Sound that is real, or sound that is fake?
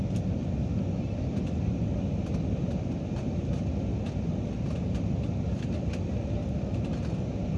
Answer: real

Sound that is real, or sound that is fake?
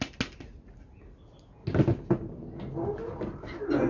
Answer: real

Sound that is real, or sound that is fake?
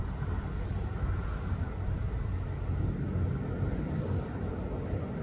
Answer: real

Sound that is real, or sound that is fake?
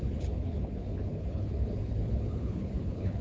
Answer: fake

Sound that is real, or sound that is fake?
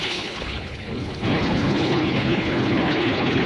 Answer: fake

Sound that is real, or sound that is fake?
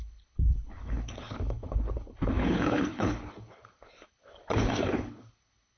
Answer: fake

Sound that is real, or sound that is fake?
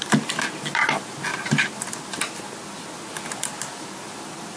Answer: real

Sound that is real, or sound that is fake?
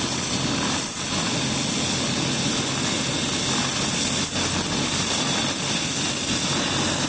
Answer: real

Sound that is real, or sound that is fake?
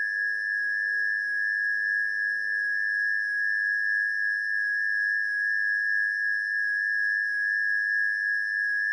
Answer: real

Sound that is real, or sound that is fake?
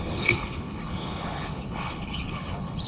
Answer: fake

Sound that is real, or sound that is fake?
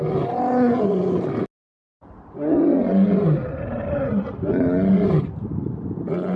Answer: real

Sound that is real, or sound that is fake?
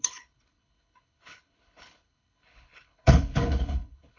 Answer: fake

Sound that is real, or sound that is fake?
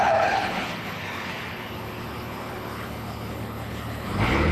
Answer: fake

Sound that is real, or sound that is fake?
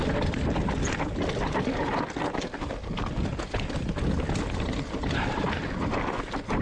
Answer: real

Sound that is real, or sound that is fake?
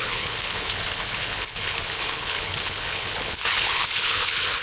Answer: fake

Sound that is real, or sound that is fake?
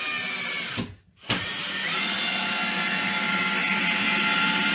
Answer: real